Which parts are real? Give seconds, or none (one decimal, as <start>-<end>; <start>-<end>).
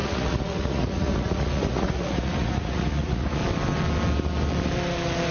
3.4-5.3